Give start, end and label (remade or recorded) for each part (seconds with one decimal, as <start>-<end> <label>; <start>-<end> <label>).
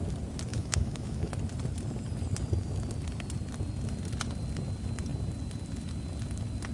0.0-0.5 recorded; 0.5-1.3 remade; 1.3-6.7 recorded